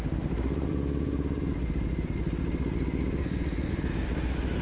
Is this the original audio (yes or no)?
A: yes